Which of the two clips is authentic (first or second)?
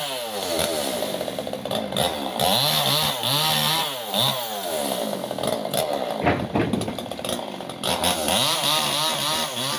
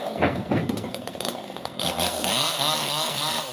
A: first